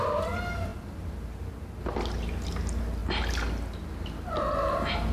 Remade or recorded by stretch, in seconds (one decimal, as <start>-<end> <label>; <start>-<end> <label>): 0.0-5.1 recorded